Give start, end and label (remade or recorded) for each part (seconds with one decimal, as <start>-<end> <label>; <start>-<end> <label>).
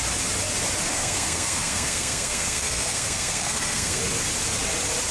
0.0-0.9 recorded; 0.9-4.0 remade; 4.0-5.1 recorded